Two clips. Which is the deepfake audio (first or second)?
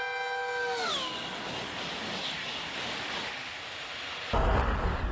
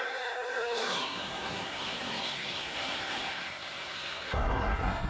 second